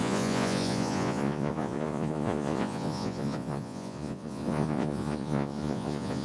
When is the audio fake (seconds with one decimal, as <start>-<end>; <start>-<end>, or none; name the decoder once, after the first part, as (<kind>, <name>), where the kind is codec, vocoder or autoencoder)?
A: 0.0-6.2 (vocoder, Vocos)